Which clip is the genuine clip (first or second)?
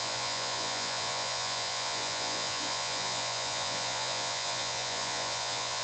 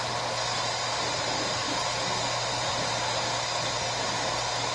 second